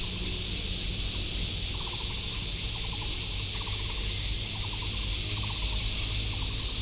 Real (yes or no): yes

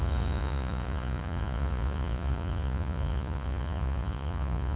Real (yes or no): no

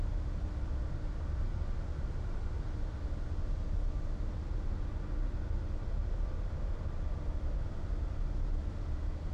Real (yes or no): yes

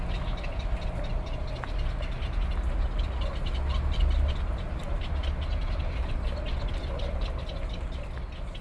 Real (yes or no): yes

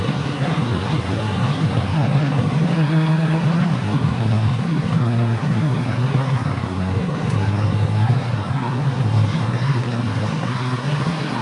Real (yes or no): no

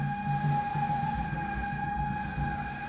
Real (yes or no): yes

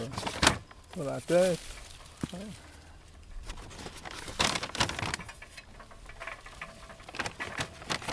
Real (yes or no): yes